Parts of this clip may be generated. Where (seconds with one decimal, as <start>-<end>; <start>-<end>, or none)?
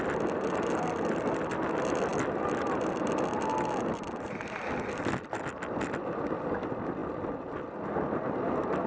none